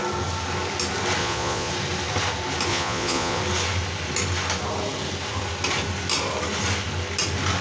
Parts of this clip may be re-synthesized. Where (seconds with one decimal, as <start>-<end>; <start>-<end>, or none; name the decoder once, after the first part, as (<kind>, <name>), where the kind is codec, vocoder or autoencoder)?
1.2-1.7 (vocoder, Vocos); 2.7-3.4